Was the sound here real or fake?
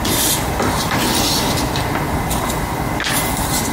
real